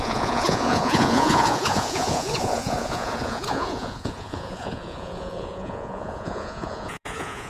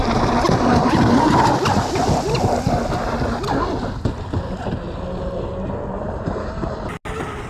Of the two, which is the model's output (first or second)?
first